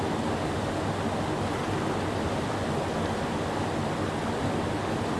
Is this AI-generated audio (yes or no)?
no